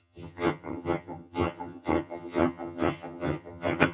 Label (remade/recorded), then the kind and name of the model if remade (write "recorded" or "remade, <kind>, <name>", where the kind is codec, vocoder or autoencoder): remade, vocoder, HiFi-GAN